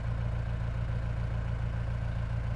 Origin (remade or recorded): recorded